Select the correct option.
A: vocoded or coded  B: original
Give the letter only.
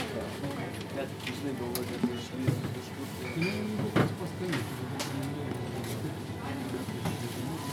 B